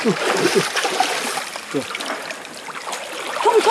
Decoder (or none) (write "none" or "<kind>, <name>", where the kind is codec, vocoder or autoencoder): none